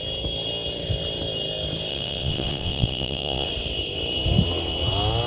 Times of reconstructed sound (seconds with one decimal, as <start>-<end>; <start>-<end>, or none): 1.9-3.5

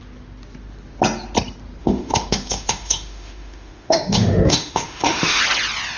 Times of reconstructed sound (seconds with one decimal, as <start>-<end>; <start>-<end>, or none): 1.8-5.4

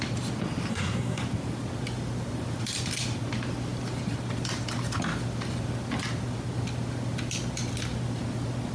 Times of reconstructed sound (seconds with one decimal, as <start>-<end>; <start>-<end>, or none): 0.7-1.2

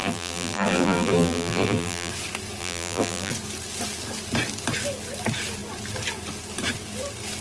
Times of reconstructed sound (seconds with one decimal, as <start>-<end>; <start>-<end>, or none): 0.0-2.1; 2.6-3.3

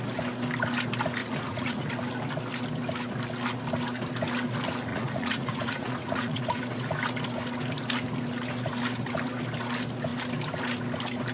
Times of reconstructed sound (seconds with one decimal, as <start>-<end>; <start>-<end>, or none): 1.2-1.9; 4.9-6.6

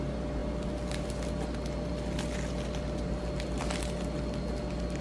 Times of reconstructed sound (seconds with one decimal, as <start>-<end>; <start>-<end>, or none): none

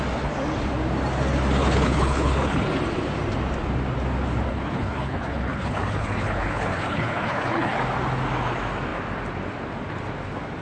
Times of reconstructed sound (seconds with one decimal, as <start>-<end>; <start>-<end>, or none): 1.6-2.6; 4.5-7.8